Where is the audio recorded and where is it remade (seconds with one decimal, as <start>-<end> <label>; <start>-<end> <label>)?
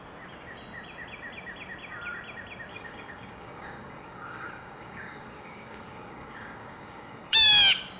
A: 0.0-2.7 recorded; 2.7-7.5 remade; 7.5-8.0 recorded